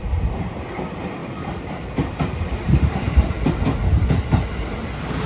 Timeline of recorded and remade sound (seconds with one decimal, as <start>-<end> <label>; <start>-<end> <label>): 0.0-1.2 recorded; 1.2-3.6 remade; 3.6-5.3 recorded